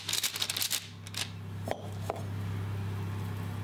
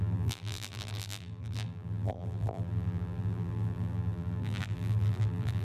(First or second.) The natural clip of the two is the first